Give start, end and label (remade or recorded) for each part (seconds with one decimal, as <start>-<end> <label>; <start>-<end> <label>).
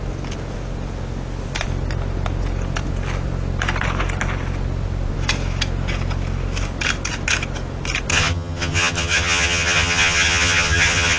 0.0-8.1 recorded; 8.1-11.2 remade